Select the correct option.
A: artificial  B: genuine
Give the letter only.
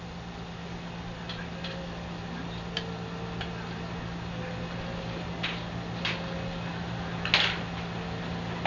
B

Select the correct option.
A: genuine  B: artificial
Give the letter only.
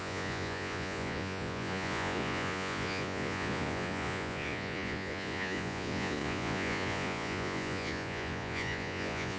B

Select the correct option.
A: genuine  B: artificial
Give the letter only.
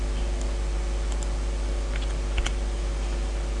A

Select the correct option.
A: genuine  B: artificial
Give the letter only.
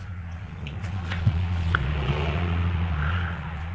B